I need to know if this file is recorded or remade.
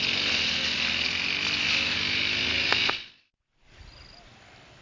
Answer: recorded